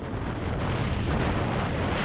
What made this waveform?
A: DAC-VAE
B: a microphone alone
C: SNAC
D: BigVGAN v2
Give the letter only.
B